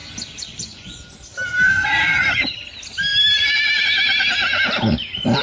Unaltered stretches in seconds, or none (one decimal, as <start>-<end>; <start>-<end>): 1.1-5.4